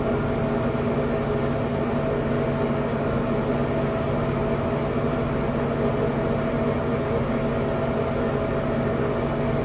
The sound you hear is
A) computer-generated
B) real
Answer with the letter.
B